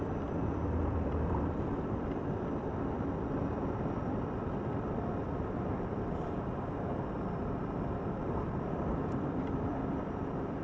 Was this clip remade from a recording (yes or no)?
yes